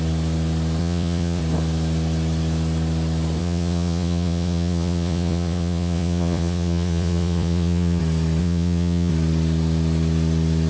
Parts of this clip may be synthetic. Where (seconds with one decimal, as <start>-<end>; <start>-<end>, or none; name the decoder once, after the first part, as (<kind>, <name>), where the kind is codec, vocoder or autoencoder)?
0.8-1.4 (vocoder, Vocos); 3.4-8.0; 8.4-9.1